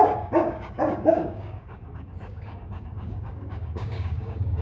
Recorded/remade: remade